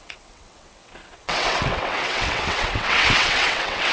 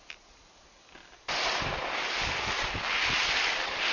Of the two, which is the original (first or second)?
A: second